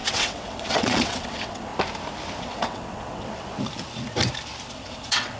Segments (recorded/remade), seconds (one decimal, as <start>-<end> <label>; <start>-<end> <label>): 0.0-1.7 remade; 1.7-2.4 recorded; 2.4-3.5 remade; 3.5-4.7 recorded; 4.7-5.4 remade